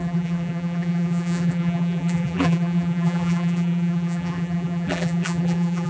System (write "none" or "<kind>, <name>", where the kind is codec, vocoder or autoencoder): vocoder, BigVGAN v2